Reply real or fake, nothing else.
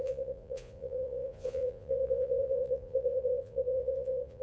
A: fake